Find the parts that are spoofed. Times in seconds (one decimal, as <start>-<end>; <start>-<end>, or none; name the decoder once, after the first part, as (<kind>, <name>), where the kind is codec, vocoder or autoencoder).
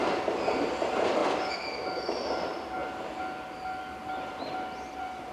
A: 0.0-2.8 (vocoder, BigVGAN v2); 3.8-5.3